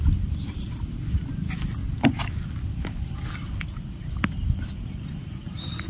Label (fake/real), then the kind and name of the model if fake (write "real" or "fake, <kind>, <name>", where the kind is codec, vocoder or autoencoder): real